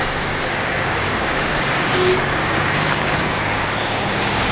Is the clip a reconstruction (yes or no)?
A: yes